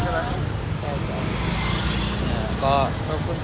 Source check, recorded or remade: recorded